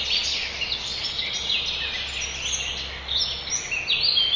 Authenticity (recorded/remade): recorded